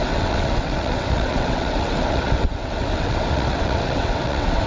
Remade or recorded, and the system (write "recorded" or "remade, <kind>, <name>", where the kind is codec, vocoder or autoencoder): remade, vocoder, WaveNeXt